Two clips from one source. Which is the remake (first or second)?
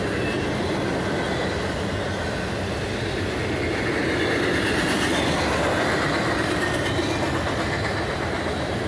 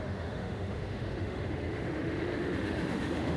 second